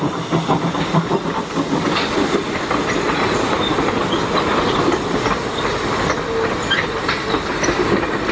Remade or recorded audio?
recorded